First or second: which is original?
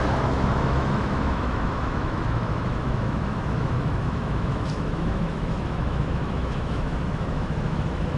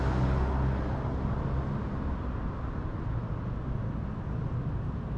second